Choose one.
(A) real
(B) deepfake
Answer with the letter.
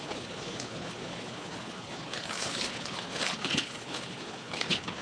B